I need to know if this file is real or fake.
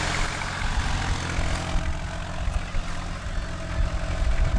real